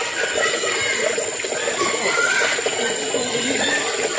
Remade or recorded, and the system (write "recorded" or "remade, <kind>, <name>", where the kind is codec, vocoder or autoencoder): recorded